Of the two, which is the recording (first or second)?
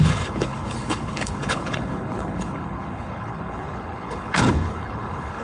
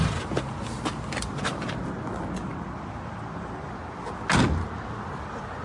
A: second